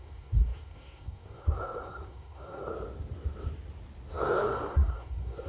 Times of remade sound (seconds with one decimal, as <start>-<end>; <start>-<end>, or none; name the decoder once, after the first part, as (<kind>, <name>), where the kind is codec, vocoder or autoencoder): 0.0-2.7 (codec, SNAC); 4.2-5.5